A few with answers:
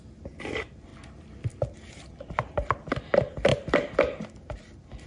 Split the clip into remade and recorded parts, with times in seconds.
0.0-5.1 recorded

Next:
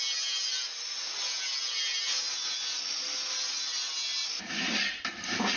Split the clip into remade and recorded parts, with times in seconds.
0.0-4.2 recorded; 4.2-5.6 remade

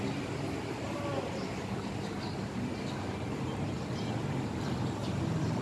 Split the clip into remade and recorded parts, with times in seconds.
0.0-5.6 recorded

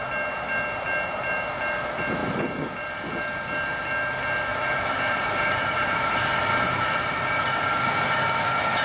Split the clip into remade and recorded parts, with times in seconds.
0.0-4.5 recorded; 4.5-6.2 remade; 6.2-8.8 recorded

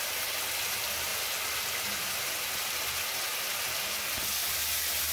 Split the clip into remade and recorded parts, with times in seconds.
0.0-5.1 recorded

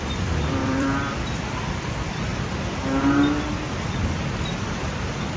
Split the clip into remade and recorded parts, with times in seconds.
0.0-2.3 remade; 2.3-3.9 recorded; 3.9-5.4 remade